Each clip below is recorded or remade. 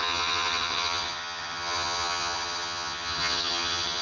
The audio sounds remade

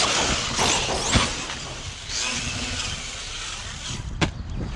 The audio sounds recorded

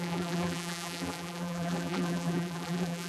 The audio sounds remade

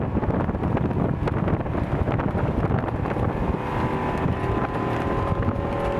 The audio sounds recorded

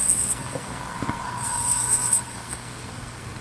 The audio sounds remade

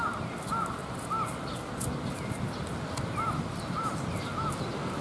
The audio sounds recorded